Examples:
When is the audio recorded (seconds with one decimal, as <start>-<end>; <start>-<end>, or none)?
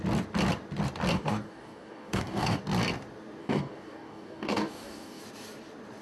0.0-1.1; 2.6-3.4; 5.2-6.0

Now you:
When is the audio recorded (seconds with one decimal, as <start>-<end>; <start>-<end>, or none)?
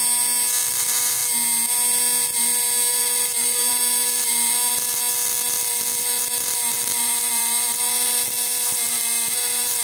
0.0-0.7; 1.2-2.9; 4.3-6.0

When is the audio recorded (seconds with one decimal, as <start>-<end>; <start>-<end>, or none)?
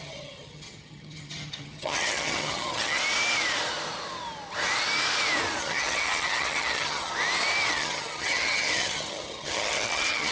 3.0-5.6; 7.1-7.7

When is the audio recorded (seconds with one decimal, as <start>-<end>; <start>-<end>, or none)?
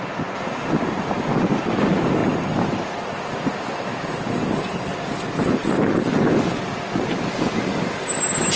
0.0-8.6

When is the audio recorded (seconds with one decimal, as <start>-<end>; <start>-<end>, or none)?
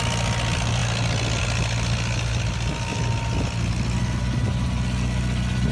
0.0-5.7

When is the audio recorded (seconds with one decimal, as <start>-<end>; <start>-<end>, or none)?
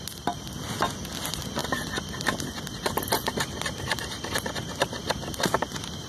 0.0-6.1